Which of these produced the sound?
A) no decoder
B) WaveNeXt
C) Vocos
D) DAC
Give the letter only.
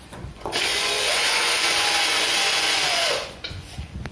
C